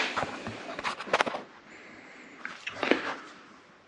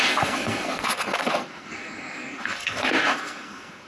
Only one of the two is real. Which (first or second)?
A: first